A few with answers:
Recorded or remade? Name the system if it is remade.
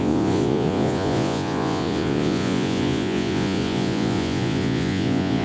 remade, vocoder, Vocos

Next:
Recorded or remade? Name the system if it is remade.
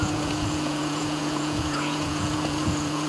remade, vocoder, Vocos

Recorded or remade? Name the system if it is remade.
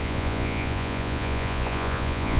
remade, vocoder, Vocos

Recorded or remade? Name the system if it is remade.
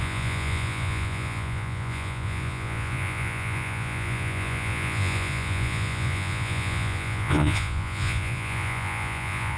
remade, vocoder, Vocos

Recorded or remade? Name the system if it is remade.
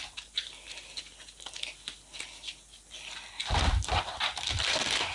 recorded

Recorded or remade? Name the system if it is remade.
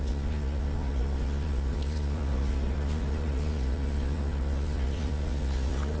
remade, vocoder, Vocos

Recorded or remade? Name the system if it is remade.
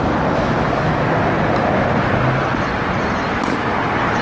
recorded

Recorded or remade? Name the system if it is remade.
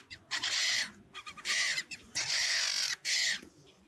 remade, vocoder, Vocos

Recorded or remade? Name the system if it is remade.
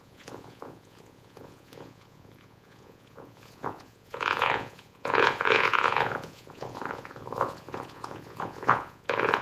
remade, vocoder, Vocos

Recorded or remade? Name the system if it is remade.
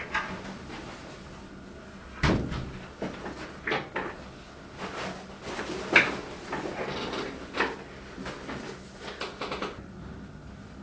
recorded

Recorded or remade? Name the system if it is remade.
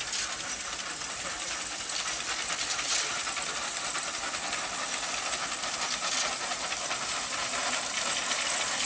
recorded